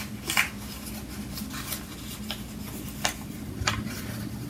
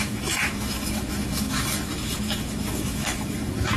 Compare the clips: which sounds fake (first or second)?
second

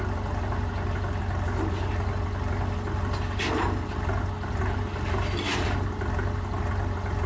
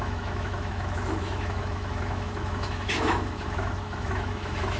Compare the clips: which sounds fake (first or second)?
second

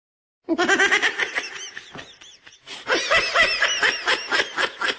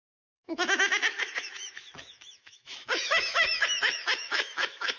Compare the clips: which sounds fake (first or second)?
second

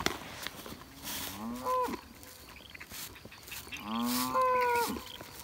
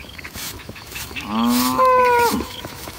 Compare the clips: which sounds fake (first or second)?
second